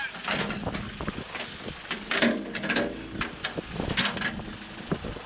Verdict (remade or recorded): recorded